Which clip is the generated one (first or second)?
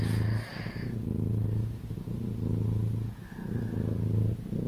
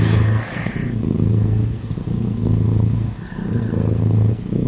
second